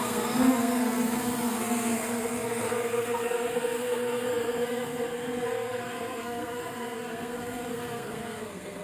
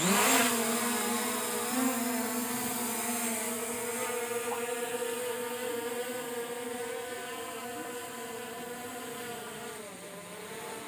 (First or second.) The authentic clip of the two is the second